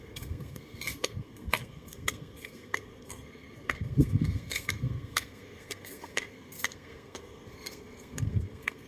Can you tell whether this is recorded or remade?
remade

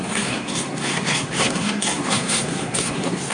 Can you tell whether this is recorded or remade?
remade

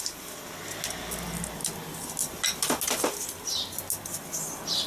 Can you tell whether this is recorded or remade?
recorded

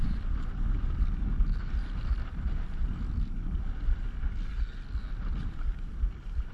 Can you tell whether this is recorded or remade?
recorded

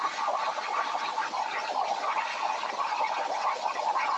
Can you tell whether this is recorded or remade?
recorded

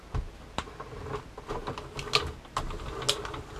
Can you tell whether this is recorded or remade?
recorded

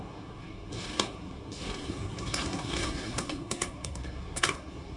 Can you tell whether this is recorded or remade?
remade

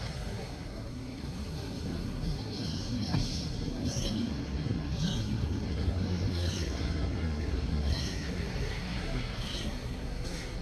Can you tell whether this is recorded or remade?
remade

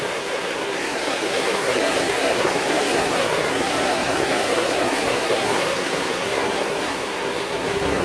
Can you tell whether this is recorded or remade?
remade